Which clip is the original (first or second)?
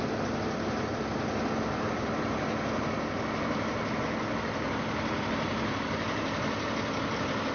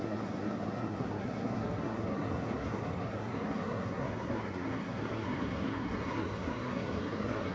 first